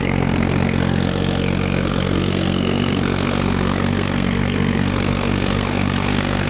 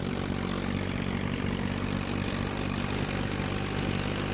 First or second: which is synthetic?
first